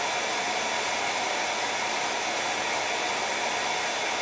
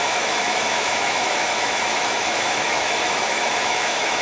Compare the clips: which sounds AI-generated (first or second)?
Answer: second